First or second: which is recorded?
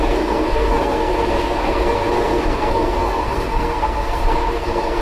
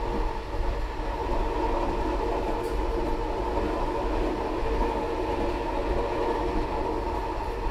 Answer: second